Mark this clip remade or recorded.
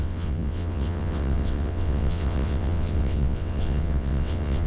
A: remade